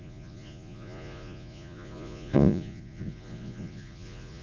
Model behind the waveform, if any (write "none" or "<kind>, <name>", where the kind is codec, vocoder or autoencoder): vocoder, Vocos